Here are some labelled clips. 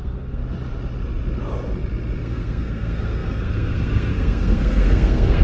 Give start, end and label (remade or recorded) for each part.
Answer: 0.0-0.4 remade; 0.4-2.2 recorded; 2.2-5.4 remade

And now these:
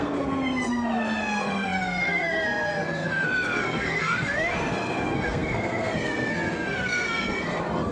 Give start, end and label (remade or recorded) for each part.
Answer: 0.0-7.9 remade